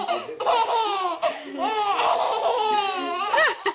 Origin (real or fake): real